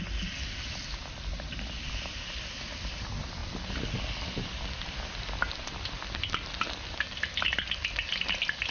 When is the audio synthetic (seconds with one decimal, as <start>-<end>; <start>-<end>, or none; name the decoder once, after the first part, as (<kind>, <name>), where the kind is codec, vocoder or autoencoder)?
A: none